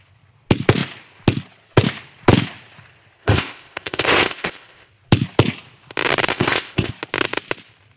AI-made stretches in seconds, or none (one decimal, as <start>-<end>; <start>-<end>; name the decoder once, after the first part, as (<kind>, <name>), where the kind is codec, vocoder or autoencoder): 3.2-4.9 (codec, ZipCodec); 6.3-6.9